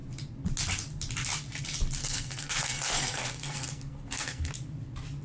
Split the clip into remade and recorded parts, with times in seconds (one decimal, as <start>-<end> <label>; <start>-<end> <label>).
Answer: 0.0-2.0 recorded; 2.0-4.5 remade; 4.5-5.2 recorded